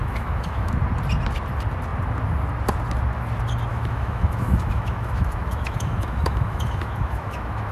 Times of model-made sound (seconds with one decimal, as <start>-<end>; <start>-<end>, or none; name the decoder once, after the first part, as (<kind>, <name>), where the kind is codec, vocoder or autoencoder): 0.0-0.7 (autoencoder, DAC-VAE); 3.7-7.7